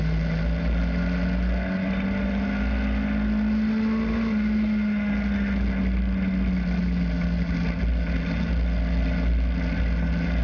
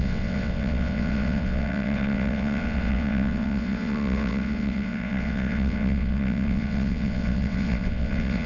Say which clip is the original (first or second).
first